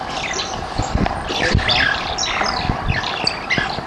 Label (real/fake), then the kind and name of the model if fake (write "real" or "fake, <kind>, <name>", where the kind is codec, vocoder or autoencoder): real